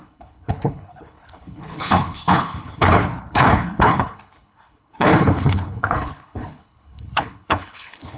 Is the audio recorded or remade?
remade